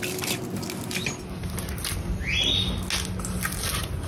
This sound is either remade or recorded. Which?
recorded